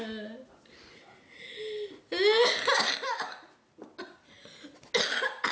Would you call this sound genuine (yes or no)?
yes